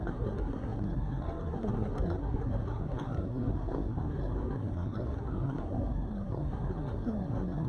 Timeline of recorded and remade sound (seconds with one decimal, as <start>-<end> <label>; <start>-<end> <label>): 0.0-7.7 remade